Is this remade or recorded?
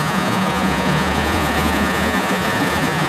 remade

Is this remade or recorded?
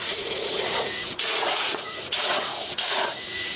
remade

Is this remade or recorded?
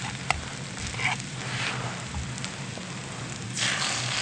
remade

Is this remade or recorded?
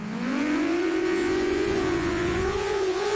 remade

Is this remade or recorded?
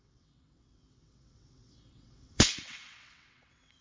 remade